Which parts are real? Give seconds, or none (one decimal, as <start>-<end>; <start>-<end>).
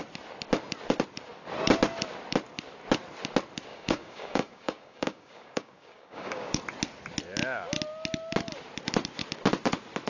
0.0-3.7; 6.6-10.1